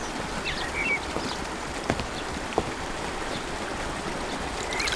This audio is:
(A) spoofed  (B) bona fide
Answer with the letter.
B